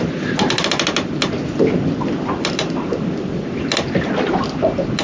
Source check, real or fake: real